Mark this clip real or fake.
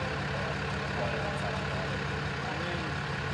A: real